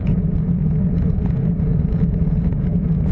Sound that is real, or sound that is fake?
fake